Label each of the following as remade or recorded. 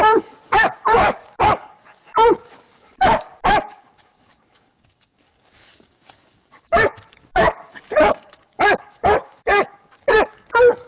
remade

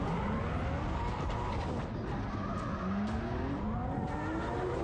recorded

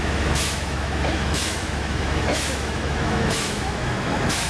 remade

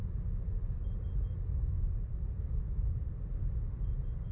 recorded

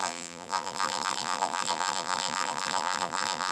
remade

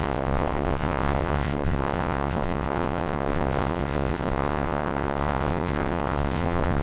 remade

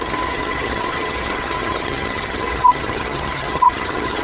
remade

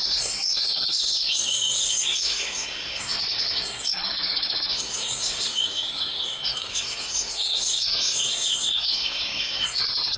remade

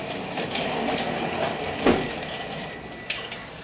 recorded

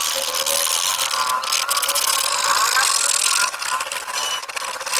recorded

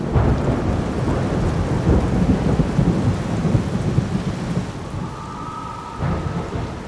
recorded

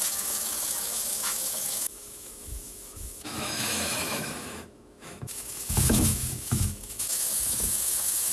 remade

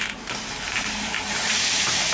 remade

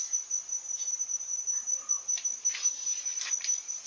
recorded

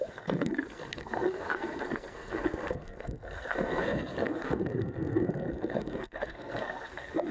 remade